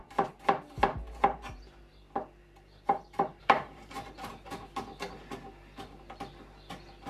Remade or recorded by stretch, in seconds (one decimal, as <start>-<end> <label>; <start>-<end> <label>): 0.0-2.4 recorded; 2.4-4.1 remade; 4.1-7.1 recorded